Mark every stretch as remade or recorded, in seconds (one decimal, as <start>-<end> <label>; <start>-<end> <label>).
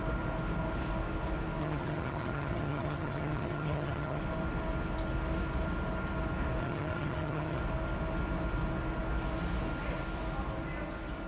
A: 0.0-1.6 recorded; 1.6-4.2 remade; 4.2-6.6 recorded; 6.6-7.6 remade; 7.6-11.3 recorded